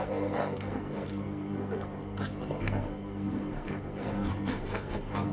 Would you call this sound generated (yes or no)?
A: yes